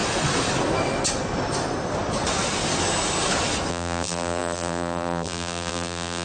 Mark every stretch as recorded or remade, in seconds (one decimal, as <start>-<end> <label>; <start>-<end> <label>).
0.0-3.7 recorded; 3.7-6.2 remade